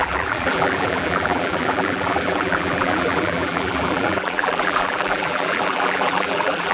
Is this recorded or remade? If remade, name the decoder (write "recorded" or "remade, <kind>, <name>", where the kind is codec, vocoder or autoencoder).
remade, vocoder, BigVGAN v2